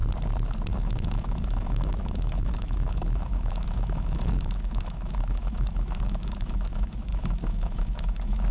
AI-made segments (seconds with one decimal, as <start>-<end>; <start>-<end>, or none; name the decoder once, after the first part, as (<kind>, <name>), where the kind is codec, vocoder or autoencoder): 0.7-8.5 (autoencoder, DAC-VAE)